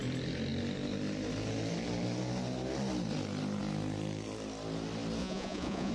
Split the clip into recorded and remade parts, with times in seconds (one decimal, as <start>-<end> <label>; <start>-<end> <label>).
0.0-5.2 recorded; 5.2-5.9 remade

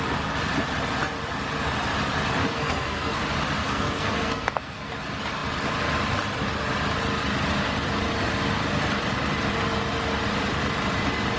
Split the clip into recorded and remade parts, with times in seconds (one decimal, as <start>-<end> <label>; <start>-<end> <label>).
0.0-2.4 recorded; 2.4-3.2 remade; 3.2-3.6 recorded; 3.6-4.9 remade; 4.9-11.4 recorded